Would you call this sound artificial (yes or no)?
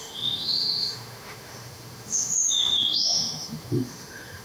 yes